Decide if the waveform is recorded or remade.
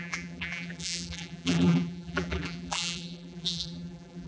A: remade